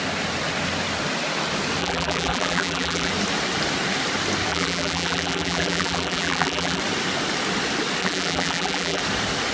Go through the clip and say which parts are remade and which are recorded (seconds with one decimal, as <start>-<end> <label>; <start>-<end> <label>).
0.0-1.8 recorded; 1.8-3.1 remade; 3.1-4.5 recorded; 4.5-6.8 remade; 6.8-8.0 recorded; 8.0-9.0 remade; 9.0-9.5 recorded